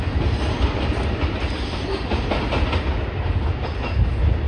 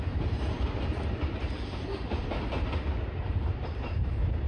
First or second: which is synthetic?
second